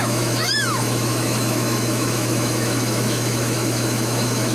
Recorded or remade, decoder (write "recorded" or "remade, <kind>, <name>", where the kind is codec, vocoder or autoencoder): remade, autoencoder, DAC-VAE